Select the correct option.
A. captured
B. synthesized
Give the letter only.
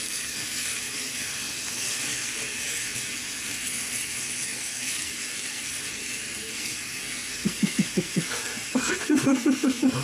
B